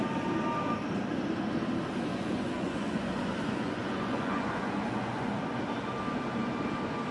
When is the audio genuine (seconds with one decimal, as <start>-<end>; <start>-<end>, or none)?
0.0-2.1; 5.4-7.1